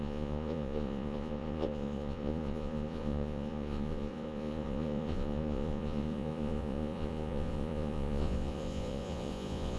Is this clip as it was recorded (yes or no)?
no